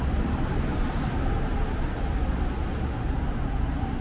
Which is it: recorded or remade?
recorded